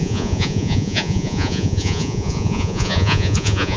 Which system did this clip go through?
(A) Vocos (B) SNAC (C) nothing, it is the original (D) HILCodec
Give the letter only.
A